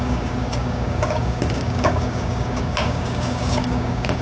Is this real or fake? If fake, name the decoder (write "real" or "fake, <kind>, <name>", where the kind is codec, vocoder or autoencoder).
fake, codec, DAC